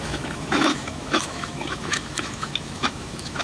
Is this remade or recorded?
remade